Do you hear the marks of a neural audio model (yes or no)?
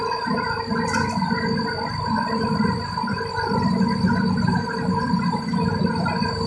no